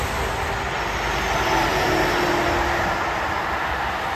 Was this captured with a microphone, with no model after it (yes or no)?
yes